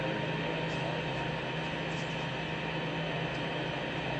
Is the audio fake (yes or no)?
no